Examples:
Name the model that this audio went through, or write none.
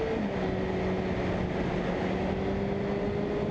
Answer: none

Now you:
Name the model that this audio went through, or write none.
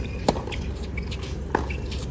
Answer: none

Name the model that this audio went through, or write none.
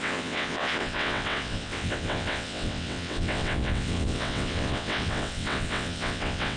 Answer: vocoder, WaveNeXt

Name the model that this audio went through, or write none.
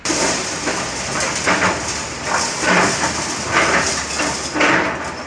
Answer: none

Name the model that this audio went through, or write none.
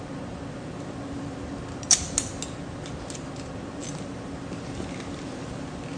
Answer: none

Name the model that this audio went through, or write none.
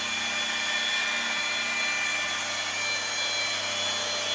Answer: none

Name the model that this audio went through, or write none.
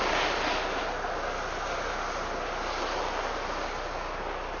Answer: none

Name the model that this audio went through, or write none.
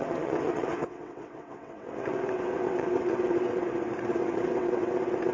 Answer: vocoder, WaveNeXt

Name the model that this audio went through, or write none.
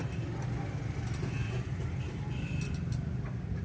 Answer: none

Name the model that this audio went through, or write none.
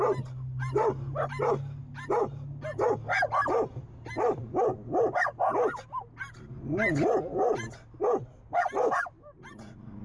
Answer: none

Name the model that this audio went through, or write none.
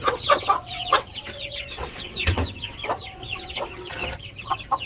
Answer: vocoder, WaveNeXt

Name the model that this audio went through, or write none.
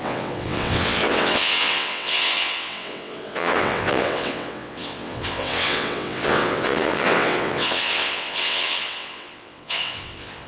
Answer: vocoder, WaveNeXt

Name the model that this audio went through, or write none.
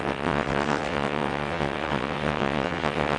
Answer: vocoder, WaveNeXt